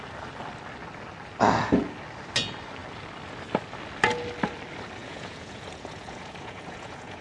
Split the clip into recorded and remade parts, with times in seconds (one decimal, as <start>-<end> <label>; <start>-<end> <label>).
0.0-5.0 recorded; 5.0-7.2 remade